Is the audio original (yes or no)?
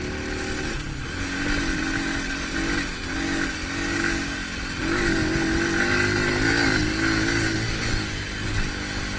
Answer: yes